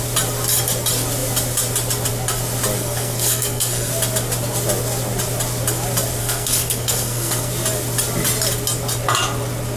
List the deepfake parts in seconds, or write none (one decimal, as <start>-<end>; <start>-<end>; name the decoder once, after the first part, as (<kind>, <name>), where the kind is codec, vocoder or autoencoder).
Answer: 2.8-3.9 (codec, SNAC); 6.2-7.5